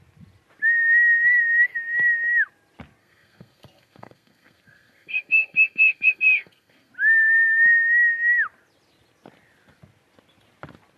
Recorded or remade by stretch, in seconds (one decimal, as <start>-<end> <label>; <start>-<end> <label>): 0.0-3.0 recorded; 3.0-6.9 remade; 6.9-11.0 recorded